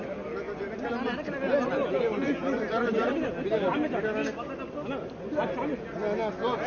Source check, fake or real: real